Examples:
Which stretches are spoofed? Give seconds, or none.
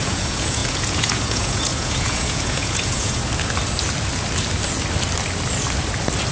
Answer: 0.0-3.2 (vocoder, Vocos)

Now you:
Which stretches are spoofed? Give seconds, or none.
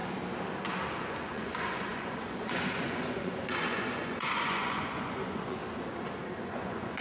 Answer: 1.0-5.6 (vocoder, Vocos); 6.4-7.0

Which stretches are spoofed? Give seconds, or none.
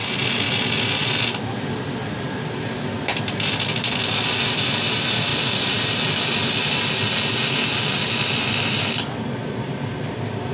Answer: none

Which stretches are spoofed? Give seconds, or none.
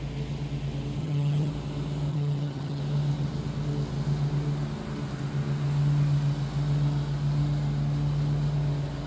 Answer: 1.0-1.5 (vocoder, HiFi-GAN); 2.1-2.8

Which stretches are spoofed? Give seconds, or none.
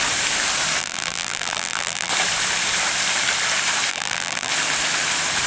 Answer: 0.8-2.1 (vocoder, BigVGAN v2); 3.9-4.5